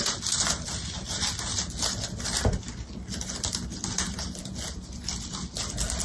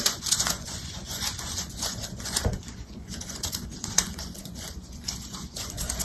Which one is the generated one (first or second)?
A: second